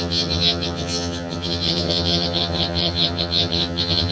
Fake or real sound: fake